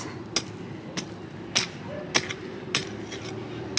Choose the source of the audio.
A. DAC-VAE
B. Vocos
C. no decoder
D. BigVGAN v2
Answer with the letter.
C